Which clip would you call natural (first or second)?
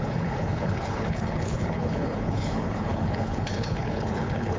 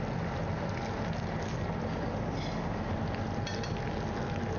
second